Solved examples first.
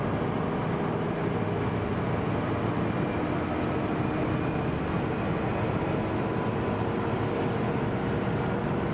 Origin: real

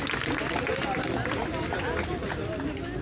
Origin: real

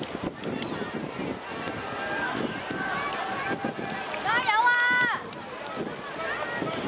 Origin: real